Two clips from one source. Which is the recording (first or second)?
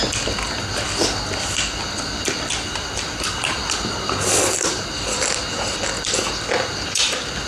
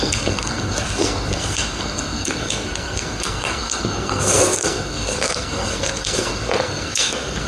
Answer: first